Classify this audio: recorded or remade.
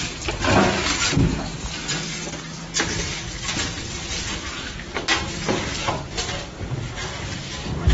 recorded